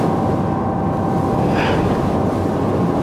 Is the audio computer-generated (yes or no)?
no